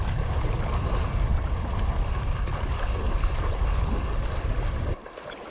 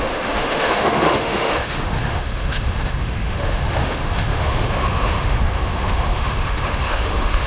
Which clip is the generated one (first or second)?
second